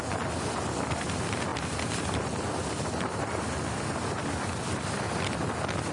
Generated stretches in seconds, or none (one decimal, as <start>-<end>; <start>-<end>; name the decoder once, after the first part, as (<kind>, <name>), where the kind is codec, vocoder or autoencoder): none